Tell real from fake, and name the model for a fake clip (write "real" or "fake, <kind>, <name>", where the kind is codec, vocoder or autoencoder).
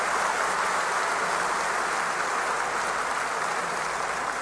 real